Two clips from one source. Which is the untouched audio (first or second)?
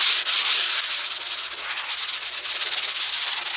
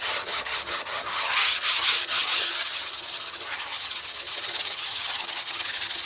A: first